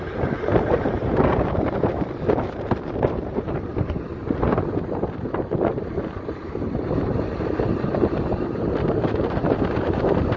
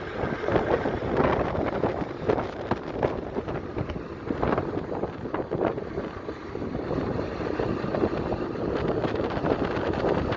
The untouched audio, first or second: second